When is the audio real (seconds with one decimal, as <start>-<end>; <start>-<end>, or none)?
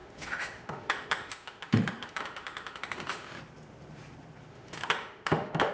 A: 3.4-4.5